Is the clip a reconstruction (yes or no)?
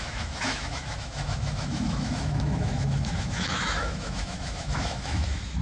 yes